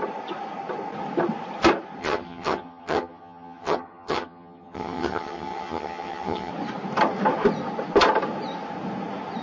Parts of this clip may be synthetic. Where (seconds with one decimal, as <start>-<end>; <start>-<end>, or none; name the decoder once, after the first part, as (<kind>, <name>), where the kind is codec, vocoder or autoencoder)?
2.0-6.5 (vocoder, HiFi-GAN)